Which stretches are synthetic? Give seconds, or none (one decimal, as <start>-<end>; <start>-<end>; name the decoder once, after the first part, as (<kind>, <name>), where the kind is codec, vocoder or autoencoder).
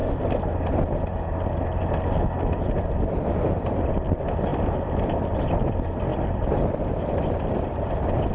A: 6.1-6.9 (vocoder, BigVGAN v2)